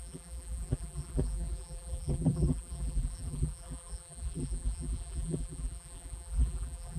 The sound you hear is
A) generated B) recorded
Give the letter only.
A